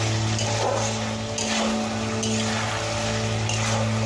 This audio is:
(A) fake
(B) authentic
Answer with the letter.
B